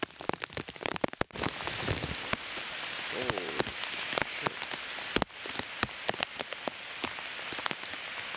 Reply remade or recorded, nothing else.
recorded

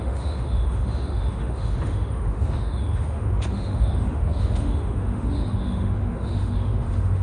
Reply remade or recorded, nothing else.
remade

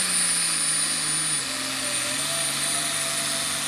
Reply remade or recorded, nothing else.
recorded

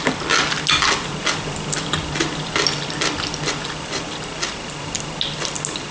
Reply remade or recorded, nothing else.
recorded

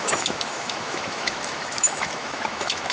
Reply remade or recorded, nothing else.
remade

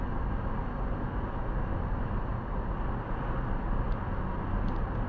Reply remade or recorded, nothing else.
recorded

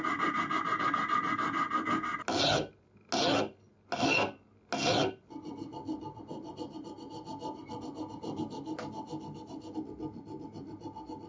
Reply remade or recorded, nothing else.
recorded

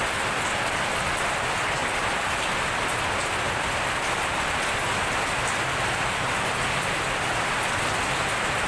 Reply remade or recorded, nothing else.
recorded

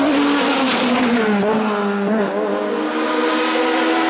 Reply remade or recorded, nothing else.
recorded